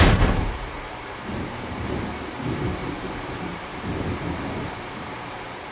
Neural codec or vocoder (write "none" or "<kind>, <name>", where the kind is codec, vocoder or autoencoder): vocoder, BigVGAN v2